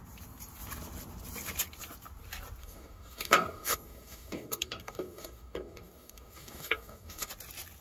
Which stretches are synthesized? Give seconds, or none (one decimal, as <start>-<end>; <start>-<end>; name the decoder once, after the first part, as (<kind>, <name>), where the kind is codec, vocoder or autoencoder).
2.6-7.3 (codec, DAC)